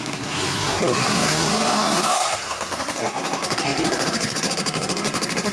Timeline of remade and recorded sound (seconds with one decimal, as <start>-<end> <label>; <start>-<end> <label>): 0.0-5.5 remade